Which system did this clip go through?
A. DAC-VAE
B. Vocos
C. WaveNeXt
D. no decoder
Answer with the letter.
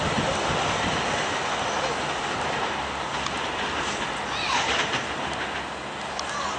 D